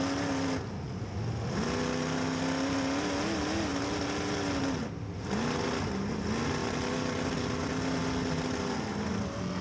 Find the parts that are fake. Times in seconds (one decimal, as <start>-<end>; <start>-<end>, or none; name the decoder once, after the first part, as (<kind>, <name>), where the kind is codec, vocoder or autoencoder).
none

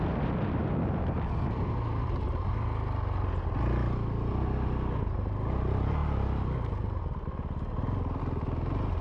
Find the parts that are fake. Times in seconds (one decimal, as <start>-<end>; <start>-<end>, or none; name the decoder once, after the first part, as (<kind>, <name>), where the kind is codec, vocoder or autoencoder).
none

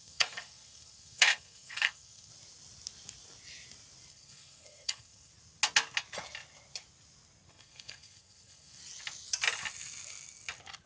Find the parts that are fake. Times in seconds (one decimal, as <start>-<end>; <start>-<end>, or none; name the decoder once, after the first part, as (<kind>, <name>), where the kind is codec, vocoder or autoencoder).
0.0-2.3 (codec, SNAC); 4.1-5.3; 7.5-8.8